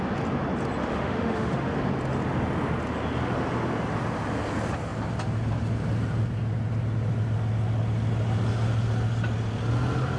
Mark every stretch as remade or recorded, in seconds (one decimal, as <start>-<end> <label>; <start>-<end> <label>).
0.0-0.8 recorded; 0.8-1.8 remade; 1.8-10.2 recorded